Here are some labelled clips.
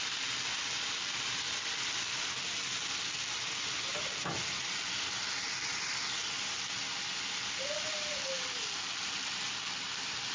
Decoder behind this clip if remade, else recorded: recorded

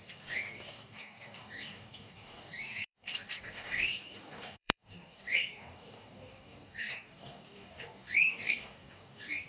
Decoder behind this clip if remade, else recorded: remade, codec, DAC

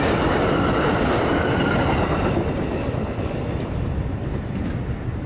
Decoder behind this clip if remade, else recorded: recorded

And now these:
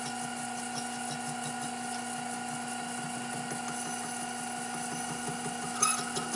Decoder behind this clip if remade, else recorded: recorded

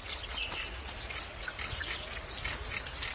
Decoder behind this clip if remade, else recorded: recorded